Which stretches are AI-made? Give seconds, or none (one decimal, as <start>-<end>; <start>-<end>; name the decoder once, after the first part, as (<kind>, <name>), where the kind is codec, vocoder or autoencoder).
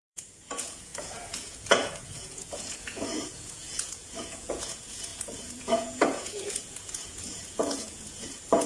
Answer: 0.0-8.7 (vocoder, Vocos)